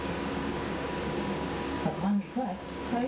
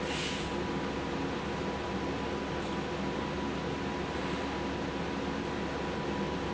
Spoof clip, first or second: first